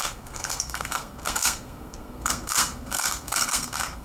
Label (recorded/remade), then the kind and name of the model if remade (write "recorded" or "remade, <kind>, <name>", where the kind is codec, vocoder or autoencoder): remade, codec, SNAC